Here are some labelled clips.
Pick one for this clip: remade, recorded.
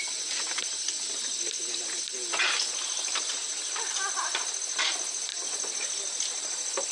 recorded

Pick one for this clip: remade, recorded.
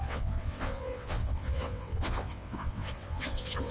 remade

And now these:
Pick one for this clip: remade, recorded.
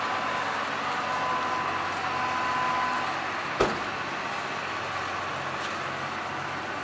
recorded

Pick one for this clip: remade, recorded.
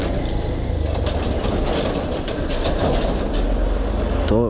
recorded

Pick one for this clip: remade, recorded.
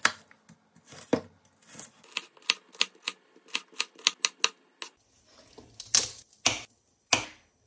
recorded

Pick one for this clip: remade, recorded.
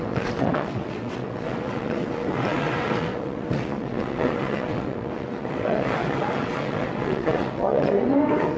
remade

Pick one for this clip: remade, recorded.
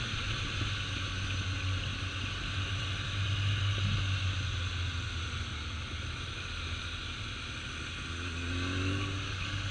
recorded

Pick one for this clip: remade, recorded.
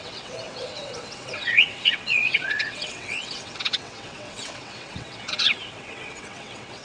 remade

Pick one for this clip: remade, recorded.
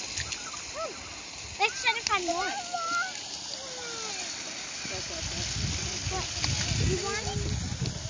recorded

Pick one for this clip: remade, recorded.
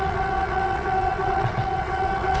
remade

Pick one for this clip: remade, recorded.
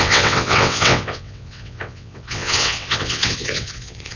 remade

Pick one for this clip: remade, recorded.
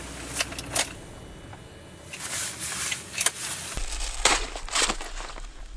recorded